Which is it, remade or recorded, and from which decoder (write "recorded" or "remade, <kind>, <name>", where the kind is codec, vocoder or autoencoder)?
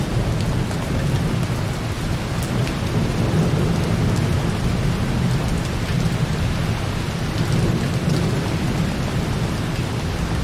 recorded